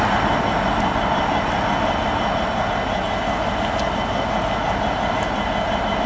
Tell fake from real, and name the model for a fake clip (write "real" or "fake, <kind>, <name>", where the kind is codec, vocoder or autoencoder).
real